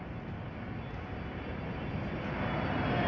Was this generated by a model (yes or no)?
no